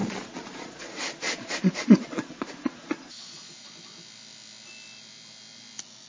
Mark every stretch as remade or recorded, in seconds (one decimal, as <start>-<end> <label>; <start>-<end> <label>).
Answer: 0.0-3.7 remade; 3.7-6.1 recorded